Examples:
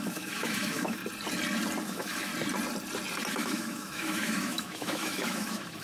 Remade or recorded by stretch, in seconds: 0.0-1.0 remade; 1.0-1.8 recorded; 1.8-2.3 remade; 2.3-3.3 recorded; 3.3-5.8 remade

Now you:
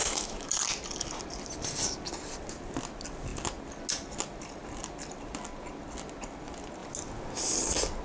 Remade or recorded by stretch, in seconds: 0.0-0.5 remade; 0.5-8.0 recorded